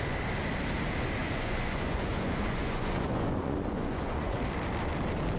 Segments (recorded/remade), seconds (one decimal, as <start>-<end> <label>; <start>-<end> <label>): 0.0-1.2 recorded; 1.2-4.4 remade; 4.4-5.4 recorded